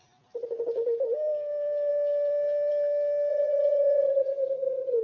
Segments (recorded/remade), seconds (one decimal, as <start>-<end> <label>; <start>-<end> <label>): 0.0-3.3 recorded; 3.3-5.0 remade